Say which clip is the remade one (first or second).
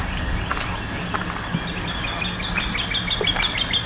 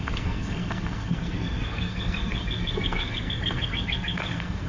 second